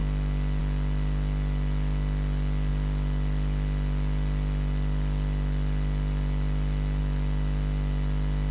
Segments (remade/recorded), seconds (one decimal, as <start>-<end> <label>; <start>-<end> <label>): 0.0-8.5 recorded

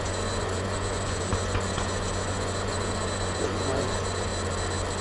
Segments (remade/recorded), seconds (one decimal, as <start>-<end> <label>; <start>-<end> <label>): 0.0-4.3 remade; 4.3-5.0 recorded

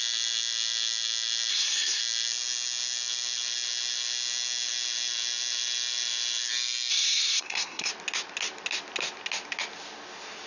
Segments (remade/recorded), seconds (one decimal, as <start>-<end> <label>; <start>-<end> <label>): 0.0-1.5 recorded; 1.5-2.0 remade; 2.0-6.9 recorded; 6.9-7.9 remade; 7.9-10.5 recorded